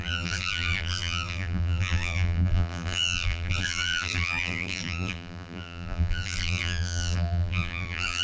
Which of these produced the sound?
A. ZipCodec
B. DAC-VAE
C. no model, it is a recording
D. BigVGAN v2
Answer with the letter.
D